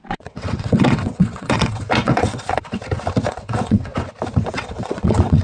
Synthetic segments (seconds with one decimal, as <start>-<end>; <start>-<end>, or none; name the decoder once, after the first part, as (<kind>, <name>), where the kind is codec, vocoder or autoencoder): 0.0-2.8 (vocoder, WaveNeXt); 3.3-3.9; 4.4-5.4